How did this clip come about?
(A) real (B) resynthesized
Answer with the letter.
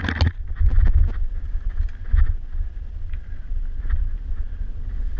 A